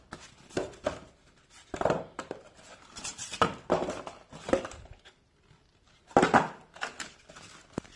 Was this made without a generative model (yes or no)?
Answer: yes